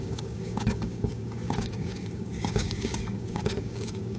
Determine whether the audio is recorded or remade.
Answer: remade